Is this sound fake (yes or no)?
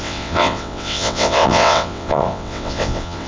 yes